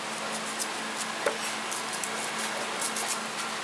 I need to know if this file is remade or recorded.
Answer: recorded